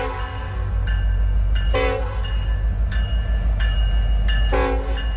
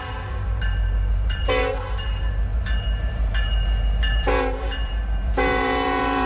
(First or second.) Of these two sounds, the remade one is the second